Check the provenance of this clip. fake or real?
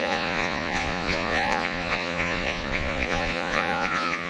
fake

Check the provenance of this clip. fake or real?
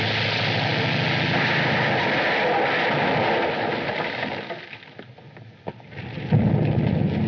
real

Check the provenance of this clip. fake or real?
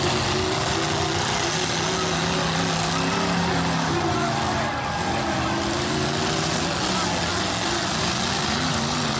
real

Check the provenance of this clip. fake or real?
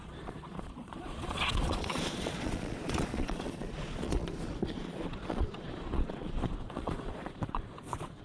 fake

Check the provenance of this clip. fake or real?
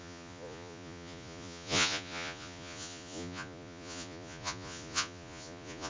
fake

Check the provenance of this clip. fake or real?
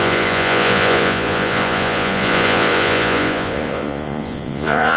fake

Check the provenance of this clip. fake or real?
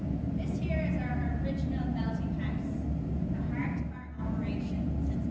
real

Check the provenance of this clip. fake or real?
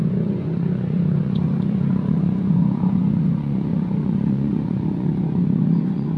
fake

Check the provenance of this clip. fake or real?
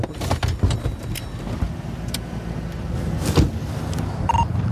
real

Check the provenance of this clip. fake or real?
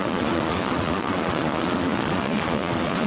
fake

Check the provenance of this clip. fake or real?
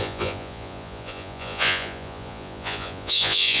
fake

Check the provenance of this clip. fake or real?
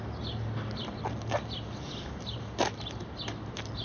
real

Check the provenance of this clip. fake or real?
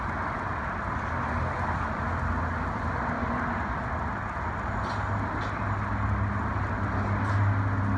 real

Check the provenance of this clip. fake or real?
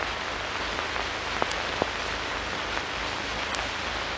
real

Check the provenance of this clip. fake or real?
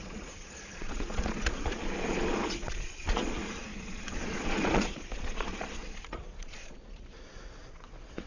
fake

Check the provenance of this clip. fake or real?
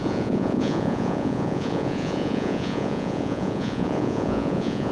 fake